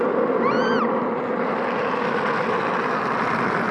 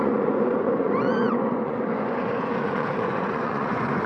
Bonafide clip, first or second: first